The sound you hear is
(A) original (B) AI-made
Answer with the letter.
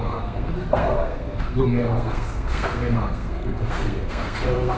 B